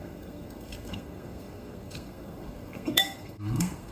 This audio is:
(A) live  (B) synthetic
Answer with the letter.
B